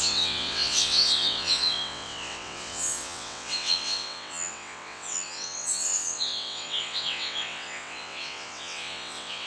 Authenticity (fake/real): fake